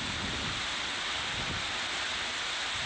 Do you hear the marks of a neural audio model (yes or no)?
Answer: no